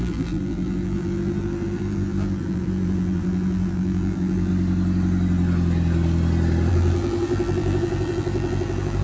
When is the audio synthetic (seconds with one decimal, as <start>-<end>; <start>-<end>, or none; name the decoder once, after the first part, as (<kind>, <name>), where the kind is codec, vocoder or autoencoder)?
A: 0.0-4.5 (vocoder, BigVGAN v2); 6.7-9.0